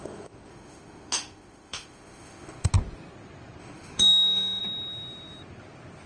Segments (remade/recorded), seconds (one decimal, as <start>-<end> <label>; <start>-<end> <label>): 0.0-2.7 remade; 2.7-3.6 recorded; 3.6-4.6 remade; 4.6-6.1 recorded